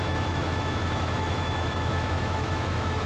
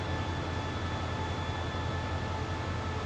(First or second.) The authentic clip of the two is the second